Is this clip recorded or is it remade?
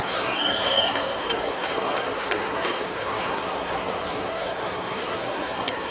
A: remade